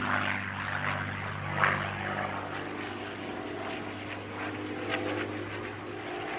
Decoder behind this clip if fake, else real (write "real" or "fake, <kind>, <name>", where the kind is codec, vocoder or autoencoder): real